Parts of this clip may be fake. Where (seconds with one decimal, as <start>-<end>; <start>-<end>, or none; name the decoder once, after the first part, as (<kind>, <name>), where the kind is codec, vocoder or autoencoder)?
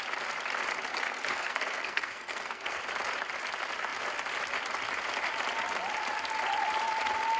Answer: 0.9-2.8 (codec, SNAC)